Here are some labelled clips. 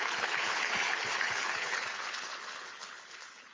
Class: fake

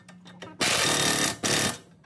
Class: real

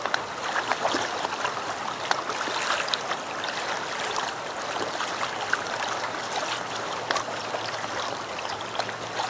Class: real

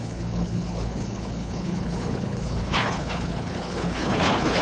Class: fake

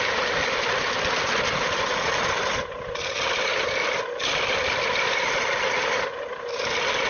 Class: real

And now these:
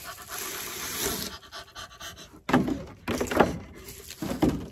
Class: real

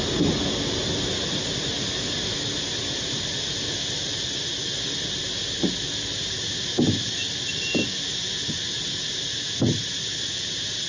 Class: real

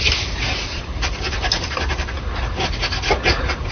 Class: real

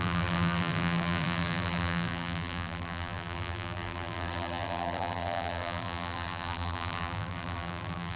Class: fake